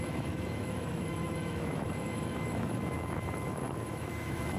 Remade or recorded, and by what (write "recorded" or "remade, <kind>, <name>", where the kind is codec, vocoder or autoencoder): remade, autoencoder, DAC-VAE